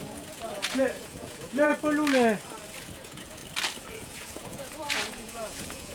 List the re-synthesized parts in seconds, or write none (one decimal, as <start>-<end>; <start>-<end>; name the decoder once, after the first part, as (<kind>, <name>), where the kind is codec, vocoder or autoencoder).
0.0-1.7 (vocoder, Vocos); 2.8-3.4; 3.9-5.9